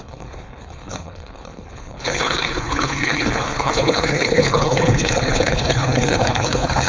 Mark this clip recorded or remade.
remade